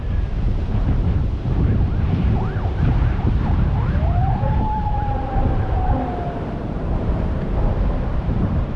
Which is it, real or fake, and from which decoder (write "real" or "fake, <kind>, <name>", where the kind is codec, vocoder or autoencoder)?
fake, vocoder, BigVGAN v2